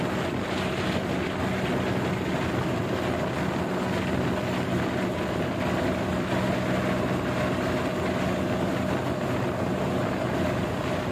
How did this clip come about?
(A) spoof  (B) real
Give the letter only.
B